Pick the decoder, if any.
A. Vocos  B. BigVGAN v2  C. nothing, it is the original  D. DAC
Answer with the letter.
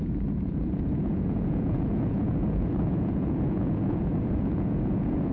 A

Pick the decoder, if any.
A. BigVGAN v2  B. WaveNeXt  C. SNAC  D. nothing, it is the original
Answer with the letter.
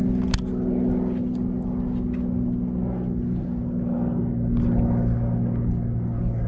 D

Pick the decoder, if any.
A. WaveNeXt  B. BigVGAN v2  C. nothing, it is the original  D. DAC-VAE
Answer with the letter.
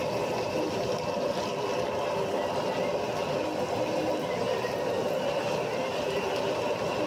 C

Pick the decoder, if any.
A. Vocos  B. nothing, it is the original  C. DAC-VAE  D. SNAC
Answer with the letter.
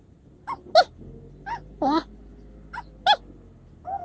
B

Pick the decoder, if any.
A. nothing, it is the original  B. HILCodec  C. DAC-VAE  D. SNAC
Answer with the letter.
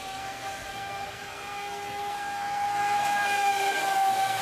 D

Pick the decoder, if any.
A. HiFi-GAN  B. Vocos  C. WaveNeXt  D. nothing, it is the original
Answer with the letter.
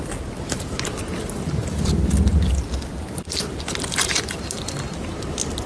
D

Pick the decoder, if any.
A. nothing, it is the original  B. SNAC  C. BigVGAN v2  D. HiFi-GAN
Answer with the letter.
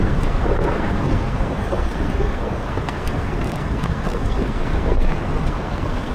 B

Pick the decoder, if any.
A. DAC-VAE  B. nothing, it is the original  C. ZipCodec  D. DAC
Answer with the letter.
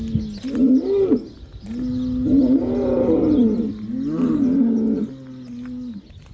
B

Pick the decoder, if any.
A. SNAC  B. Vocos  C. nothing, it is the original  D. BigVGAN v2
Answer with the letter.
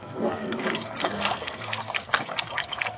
A